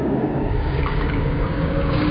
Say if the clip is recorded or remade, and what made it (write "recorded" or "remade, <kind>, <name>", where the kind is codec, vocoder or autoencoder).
remade, codec, DAC